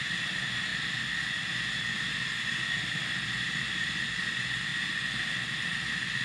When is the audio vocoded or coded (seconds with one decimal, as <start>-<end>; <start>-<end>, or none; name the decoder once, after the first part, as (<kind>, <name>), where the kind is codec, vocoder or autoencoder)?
none